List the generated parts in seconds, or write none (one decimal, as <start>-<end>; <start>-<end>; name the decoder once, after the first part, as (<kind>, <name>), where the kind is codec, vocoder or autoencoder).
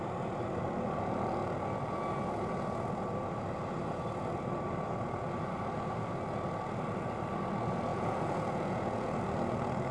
7.9-9.1 (vocoder, Vocos)